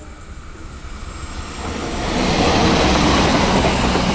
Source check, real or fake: real